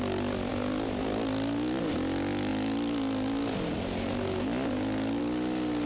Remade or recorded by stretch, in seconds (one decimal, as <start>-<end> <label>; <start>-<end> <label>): 0.0-5.9 recorded